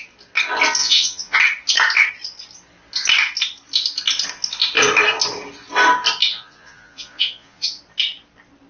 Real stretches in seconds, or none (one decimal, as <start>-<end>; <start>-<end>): 0.0-0.8; 1.4-6.3; 7.8-8.7